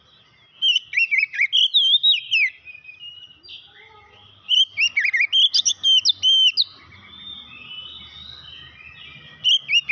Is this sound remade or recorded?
recorded